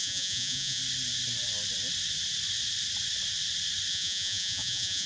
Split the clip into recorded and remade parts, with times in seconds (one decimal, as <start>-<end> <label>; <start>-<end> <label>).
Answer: 0.0-0.8 remade; 0.8-3.9 recorded; 3.9-5.1 remade